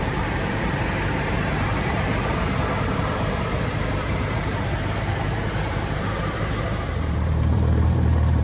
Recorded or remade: remade